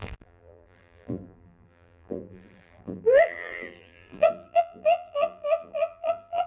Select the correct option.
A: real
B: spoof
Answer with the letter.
B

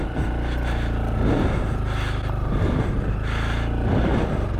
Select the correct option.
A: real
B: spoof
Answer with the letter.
A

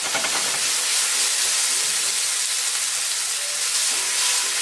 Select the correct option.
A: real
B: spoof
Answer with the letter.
A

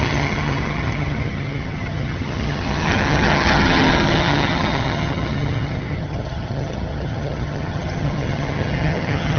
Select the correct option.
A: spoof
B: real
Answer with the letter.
A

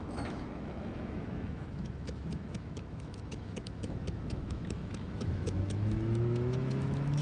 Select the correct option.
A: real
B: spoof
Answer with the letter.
B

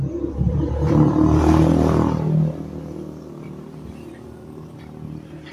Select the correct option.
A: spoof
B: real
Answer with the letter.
A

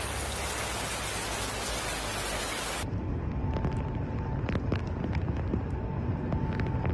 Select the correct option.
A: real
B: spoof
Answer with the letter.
A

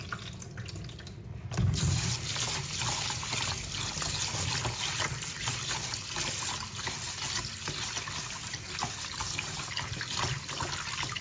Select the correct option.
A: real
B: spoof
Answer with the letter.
A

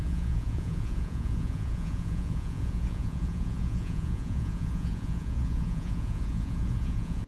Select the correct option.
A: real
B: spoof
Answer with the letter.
B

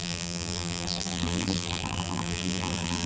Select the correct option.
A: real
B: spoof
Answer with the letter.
B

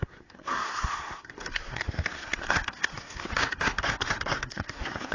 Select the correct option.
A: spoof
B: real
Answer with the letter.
A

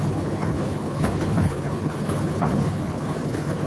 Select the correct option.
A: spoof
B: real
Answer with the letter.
A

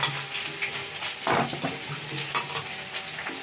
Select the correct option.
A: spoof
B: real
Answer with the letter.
B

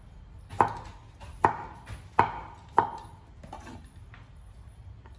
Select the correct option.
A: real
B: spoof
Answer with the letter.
A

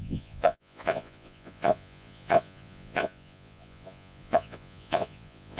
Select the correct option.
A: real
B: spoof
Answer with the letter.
B